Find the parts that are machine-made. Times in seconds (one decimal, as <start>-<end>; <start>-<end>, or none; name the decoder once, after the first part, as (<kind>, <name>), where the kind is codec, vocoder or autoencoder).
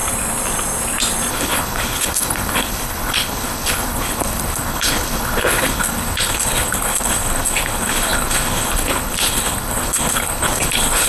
1.3-11.1 (codec, HILCodec)